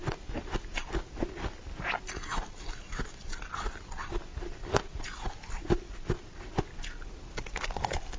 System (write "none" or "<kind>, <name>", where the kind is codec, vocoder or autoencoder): none